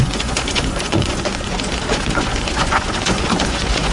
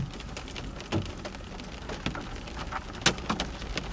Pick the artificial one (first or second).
first